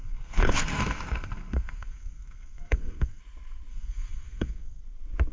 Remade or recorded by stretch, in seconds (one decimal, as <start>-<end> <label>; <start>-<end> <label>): 0.0-3.2 remade; 3.2-3.7 recorded; 3.7-4.8 remade; 4.8-5.3 recorded